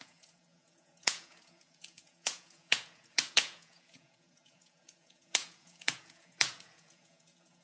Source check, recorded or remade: remade